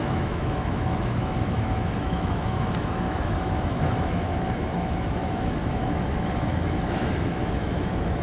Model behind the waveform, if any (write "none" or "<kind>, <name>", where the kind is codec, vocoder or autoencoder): autoencoder, DAC-VAE